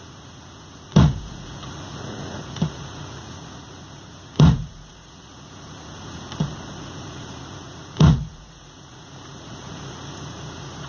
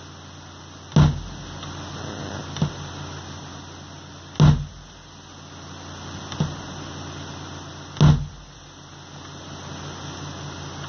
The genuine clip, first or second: second